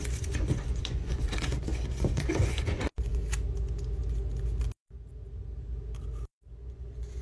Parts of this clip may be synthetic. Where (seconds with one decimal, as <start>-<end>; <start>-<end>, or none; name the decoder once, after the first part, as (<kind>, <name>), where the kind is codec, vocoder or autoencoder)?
0.0-3.2 (vocoder, Vocos); 6.6-7.2